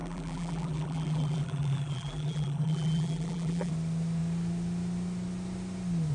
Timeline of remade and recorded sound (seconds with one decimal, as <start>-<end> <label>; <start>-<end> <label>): 0.0-3.7 remade; 3.7-6.1 recorded